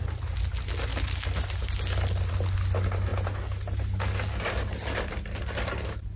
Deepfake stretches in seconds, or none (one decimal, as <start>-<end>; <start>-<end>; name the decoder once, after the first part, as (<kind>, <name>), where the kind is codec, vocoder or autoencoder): none